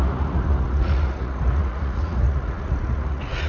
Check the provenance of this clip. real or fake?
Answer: fake